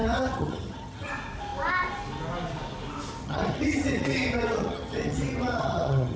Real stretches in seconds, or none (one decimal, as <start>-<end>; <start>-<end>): 1.1-3.2